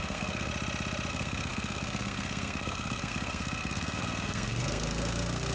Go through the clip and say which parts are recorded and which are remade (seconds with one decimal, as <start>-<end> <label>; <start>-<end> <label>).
0.0-0.5 remade; 0.5-1.1 recorded; 1.1-5.5 remade